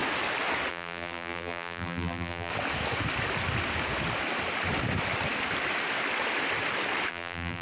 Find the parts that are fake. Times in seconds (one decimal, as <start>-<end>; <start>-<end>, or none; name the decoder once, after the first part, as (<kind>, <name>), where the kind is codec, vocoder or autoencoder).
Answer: 0.7-2.5 (vocoder, BigVGAN v2); 7.1-7.6